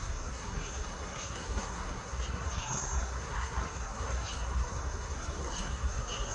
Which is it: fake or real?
fake